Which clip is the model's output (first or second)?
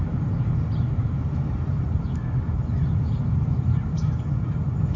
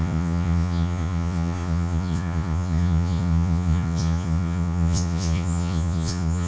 second